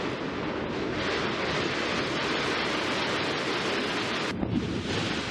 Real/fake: real